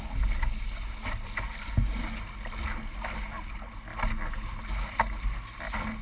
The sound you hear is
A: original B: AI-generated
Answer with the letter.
A